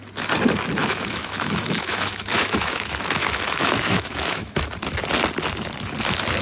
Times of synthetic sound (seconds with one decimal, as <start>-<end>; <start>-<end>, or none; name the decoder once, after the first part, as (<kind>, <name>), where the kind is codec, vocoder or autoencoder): 0.8-4.6 (autoencoder, DAC-VAE)